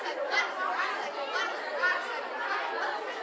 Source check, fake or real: real